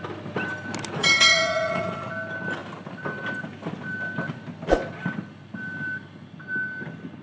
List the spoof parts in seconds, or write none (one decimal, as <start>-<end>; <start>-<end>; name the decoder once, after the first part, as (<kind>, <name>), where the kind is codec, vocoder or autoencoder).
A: 1.0-2.1 (vocoder, Vocos)